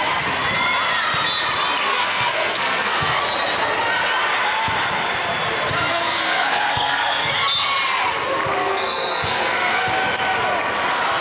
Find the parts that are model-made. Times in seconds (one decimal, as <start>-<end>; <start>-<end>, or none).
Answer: 1.9-3.2; 5.9-7.3; 8.6-9.9